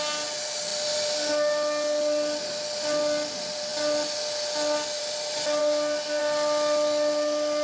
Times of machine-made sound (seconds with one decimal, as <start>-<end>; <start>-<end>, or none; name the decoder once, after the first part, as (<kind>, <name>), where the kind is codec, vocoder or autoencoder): 5.6-6.2 (codec, SNAC)